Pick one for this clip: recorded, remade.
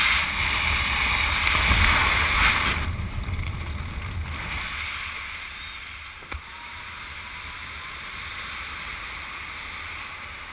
recorded